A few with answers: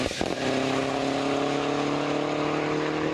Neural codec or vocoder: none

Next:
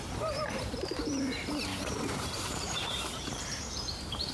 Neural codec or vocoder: vocoder, BigVGAN v2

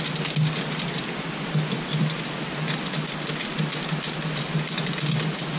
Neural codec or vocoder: none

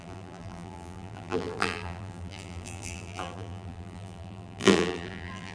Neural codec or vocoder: vocoder, BigVGAN v2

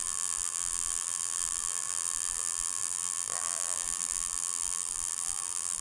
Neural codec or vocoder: vocoder, BigVGAN v2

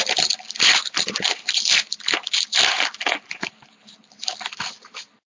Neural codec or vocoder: vocoder, BigVGAN v2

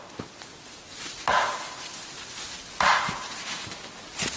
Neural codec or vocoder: none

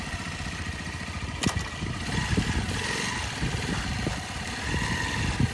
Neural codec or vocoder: none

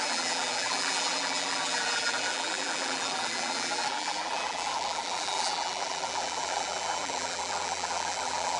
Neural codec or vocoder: vocoder, BigVGAN v2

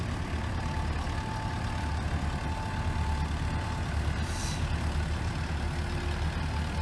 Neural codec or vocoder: none